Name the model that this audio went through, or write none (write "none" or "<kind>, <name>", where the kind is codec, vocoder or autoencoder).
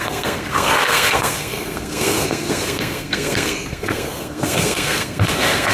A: codec, SNAC